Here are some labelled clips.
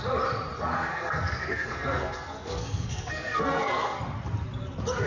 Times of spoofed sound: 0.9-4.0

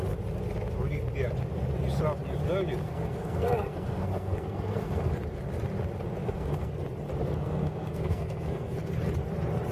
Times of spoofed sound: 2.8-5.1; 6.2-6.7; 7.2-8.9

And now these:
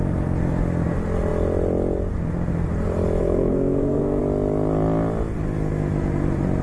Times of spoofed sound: 3.2-4.2

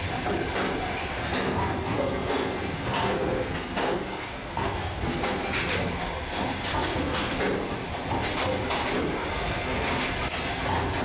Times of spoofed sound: 1.0-5.5; 6.7-7.4; 9.3-10.1